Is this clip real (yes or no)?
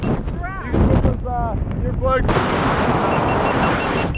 yes